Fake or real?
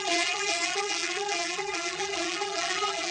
fake